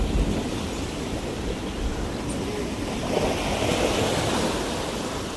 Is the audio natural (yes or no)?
yes